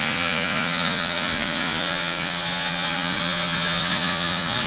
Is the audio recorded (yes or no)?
no